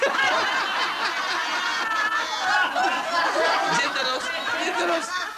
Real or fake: real